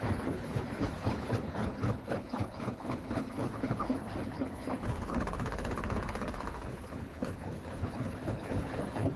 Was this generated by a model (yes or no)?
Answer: yes